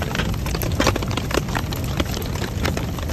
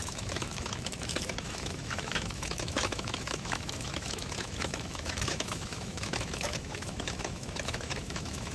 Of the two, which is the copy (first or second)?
second